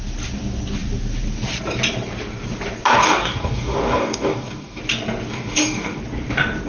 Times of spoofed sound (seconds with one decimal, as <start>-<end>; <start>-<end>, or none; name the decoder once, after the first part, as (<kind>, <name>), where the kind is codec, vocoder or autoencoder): 3.0-4.8 (codec, DAC); 5.3-6.0